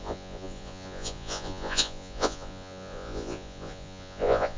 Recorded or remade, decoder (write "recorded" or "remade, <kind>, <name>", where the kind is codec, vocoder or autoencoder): remade, vocoder, Vocos